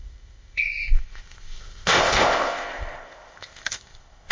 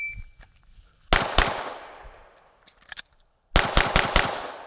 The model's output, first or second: first